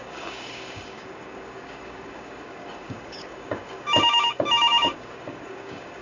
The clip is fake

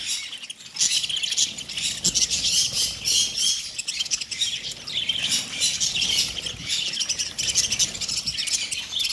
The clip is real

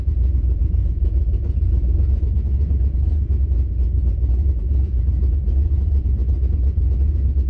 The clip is fake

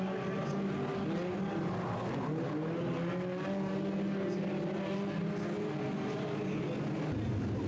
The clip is real